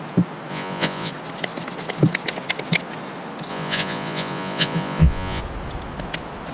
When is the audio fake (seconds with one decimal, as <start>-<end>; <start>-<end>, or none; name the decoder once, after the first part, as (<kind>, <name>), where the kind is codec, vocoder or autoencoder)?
0.5-1.1 (vocoder, Vocos); 3.5-5.4